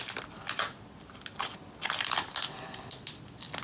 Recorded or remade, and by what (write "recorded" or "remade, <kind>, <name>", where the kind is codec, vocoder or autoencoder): recorded